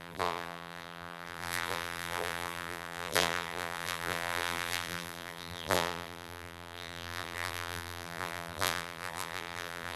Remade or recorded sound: remade